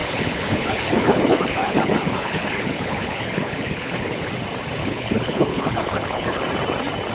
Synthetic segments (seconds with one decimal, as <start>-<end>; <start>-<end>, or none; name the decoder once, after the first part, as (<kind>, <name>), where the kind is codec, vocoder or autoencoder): 0.0-4.3 (codec, HILCodec); 4.8-6.4